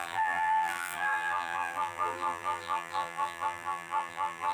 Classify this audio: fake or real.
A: fake